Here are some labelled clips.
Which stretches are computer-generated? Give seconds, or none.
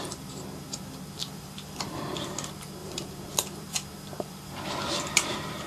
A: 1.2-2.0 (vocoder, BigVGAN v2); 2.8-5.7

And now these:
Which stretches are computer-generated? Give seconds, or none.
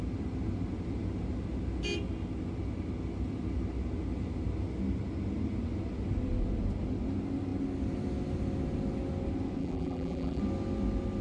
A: 9.6-10.4 (vocoder, BigVGAN v2)